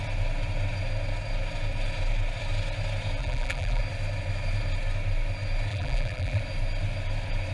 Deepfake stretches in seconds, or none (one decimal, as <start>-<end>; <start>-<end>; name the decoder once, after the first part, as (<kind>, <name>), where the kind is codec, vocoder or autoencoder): 3.2-3.8 (vocoder, BigVGAN v2); 5.7-6.4